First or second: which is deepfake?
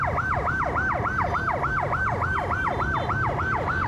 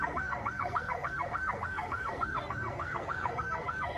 second